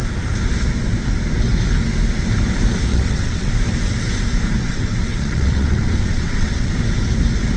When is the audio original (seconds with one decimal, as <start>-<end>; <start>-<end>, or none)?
0.0-2.9; 3.5-4.6; 6.7-7.6